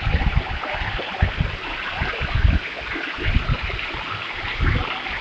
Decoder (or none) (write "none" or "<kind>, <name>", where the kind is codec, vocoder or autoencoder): none